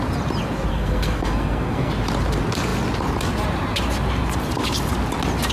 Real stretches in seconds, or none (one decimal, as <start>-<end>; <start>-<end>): 0.0-0.7; 1.9-5.5